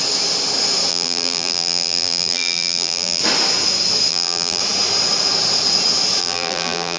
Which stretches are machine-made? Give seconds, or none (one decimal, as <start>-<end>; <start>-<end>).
0.9-3.2; 4.1-4.6; 6.2-7.0